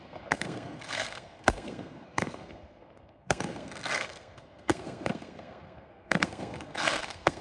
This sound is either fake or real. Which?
fake